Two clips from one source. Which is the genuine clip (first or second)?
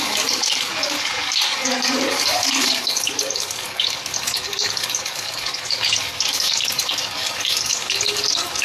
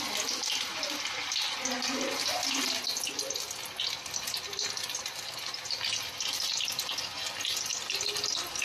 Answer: second